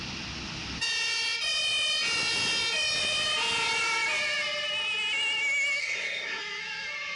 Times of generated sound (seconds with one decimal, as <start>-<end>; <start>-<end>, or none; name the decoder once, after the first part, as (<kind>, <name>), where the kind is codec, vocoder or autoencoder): 5.8-6.4 (codec, SNAC)